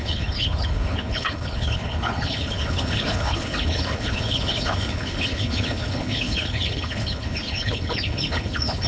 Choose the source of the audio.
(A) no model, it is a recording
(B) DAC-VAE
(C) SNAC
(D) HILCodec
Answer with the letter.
D